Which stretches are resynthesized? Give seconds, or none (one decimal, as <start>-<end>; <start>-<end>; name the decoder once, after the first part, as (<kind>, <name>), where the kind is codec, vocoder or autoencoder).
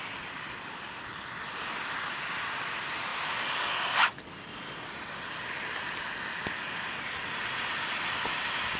none